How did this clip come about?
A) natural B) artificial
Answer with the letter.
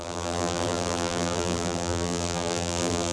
B